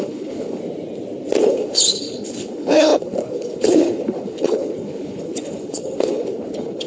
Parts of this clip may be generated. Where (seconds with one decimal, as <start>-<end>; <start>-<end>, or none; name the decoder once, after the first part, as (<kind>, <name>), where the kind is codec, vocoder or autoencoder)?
0.0-0.6 (codec, HILCodec); 1.4-6.9